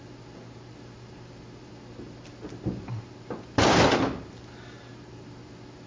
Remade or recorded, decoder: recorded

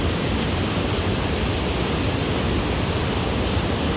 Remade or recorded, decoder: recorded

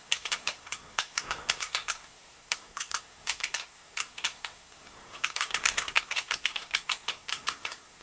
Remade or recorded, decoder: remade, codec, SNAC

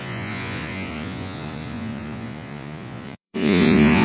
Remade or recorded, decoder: remade, vocoder, Vocos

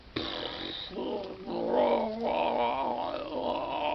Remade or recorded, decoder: recorded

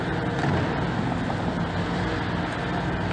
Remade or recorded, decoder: recorded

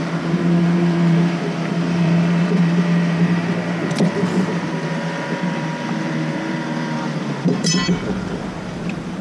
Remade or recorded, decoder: remade, vocoder, BigVGAN v2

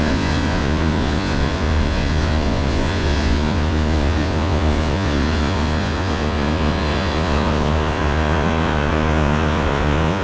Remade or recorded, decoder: remade, vocoder, Vocos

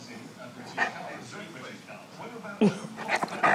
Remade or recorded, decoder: recorded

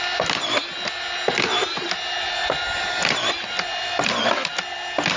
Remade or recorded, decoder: recorded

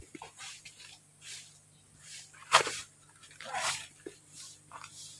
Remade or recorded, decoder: remade, vocoder, BigVGAN v2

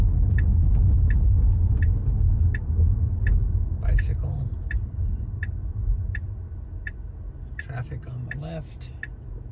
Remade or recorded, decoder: recorded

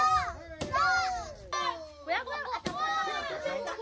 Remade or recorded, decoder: recorded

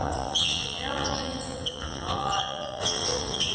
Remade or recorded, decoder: remade, vocoder, WaveNeXt